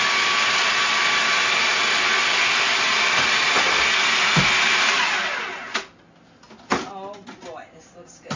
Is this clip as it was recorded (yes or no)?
yes